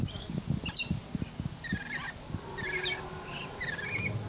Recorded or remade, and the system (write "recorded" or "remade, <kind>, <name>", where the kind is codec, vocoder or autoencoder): recorded